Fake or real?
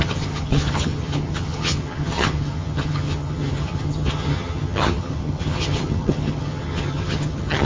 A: fake